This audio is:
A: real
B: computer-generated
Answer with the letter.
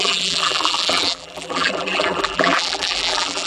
B